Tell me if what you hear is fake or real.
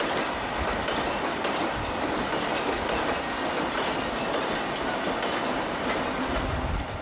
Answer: real